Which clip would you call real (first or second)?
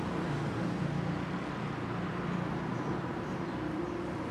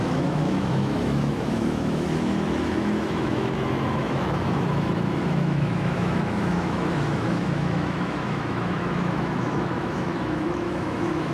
first